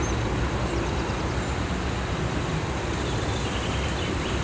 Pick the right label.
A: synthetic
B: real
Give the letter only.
B